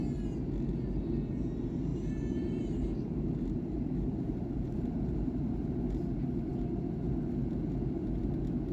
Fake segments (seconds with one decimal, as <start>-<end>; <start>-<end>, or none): 1.9-5.7